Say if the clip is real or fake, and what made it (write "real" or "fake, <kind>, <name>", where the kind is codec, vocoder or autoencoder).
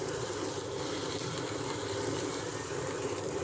real